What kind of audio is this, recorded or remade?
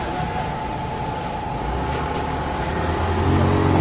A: recorded